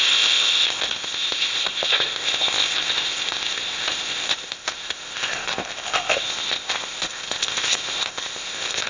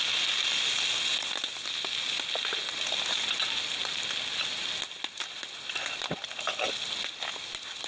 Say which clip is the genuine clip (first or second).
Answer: second